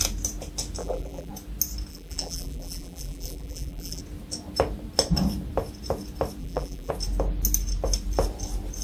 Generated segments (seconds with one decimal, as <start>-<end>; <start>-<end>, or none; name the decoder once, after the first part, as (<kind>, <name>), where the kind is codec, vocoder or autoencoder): 0.8-1.3 (vocoder, BigVGAN v2); 1.9-4.0; 6.4-6.9